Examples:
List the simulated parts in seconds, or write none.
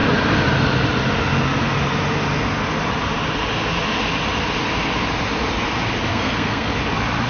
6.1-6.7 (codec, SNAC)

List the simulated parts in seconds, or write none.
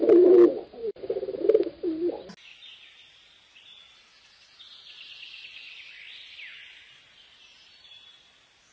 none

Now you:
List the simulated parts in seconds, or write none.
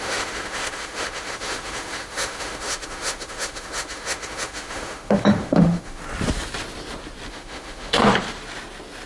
0.0-6.0 (autoencoder, DAC-VAE); 7.3-8.0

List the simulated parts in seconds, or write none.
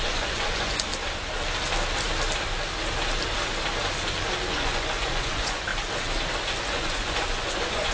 0.0-0.9 (vocoder, Vocos); 4.5-5.7; 6.6-7.9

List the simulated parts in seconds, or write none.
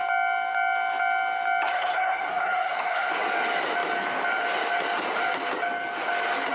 1.7-3.1 (codec, SNAC)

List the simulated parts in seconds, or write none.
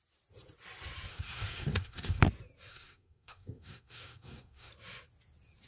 1.1-2.2 (codec, SNAC); 2.7-4.7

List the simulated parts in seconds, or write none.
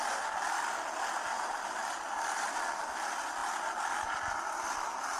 none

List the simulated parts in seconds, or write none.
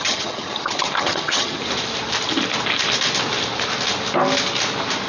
0.0-1.6 (vocoder, HiFi-GAN)